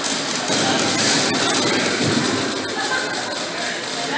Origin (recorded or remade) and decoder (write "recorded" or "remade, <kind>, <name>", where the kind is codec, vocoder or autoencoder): recorded